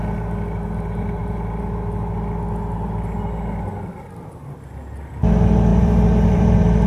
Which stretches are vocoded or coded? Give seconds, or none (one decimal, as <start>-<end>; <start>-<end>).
5.7-6.9